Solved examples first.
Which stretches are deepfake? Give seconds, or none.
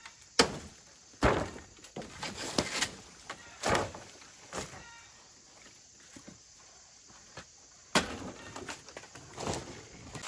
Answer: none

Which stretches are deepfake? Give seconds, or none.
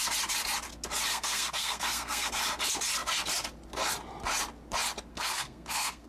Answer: 1.1-2.4 (codec, SNAC); 5.1-6.1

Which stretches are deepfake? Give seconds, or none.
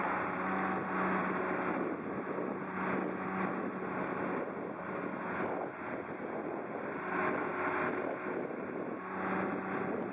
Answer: none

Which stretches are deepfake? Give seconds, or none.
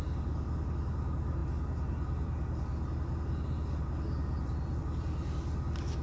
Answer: none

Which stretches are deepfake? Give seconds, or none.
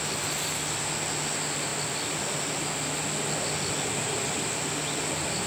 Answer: none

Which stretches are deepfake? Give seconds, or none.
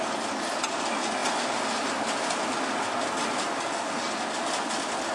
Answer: none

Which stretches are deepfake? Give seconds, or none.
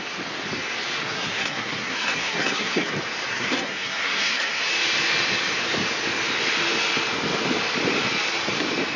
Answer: 1.0-2.9 (codec, SNAC); 3.3-4.6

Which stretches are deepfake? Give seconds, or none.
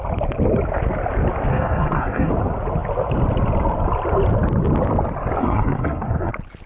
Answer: 1.5-2.3 (codec, SNAC); 5.4-6.3